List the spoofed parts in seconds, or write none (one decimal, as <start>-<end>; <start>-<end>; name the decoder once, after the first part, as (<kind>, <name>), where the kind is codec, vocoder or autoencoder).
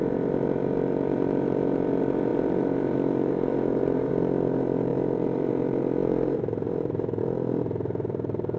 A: 0.0-8.6 (vocoder, BigVGAN v2)